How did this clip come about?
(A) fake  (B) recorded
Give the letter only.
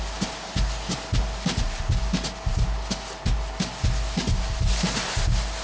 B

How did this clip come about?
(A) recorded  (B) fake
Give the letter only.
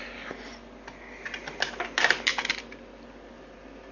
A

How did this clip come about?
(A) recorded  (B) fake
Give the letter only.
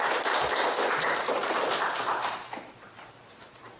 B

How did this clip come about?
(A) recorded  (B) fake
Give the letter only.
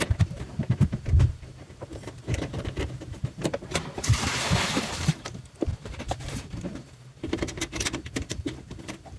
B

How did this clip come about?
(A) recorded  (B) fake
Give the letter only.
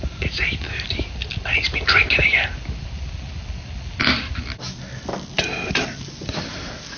A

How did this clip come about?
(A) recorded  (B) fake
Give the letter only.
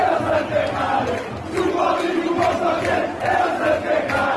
A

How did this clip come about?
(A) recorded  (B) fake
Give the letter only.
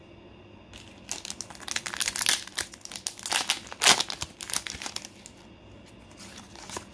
A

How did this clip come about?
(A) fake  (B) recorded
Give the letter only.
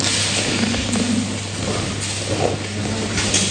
B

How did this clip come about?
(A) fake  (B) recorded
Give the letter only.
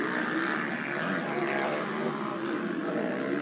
B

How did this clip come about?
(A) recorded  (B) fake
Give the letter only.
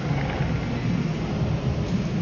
A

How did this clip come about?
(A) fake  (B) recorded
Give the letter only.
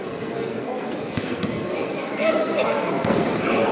A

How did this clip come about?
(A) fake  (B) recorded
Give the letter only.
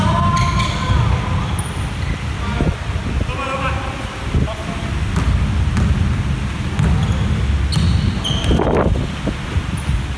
B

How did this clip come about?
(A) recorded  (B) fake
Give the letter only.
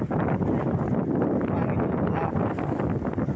A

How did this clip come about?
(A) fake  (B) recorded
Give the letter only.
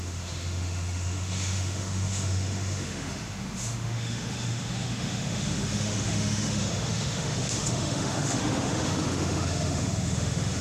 A